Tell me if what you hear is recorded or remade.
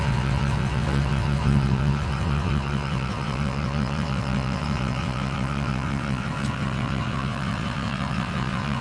remade